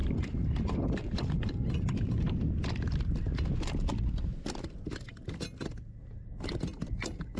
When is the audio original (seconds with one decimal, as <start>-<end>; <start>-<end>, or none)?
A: 1.4-7.4